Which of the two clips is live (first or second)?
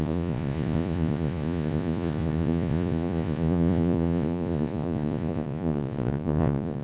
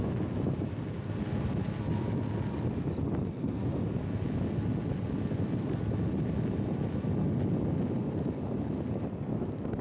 second